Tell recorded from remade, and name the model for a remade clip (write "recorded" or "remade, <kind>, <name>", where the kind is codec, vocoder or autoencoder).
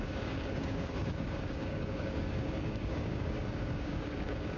remade, codec, DAC